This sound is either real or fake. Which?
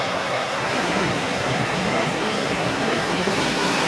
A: fake